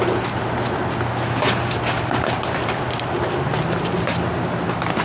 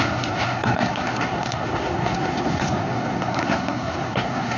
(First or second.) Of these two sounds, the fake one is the second